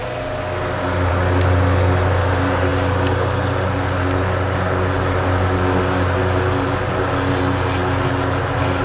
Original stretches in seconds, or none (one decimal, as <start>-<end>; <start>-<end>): 0.0-8.8